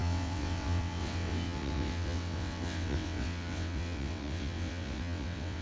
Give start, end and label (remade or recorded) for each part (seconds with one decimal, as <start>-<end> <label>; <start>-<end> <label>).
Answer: 0.0-5.6 remade